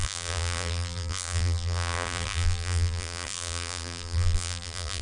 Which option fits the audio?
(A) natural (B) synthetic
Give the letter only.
B